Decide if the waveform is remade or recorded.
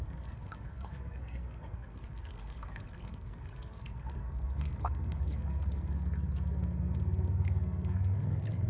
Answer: remade